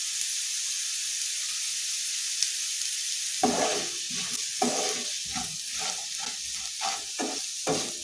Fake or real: real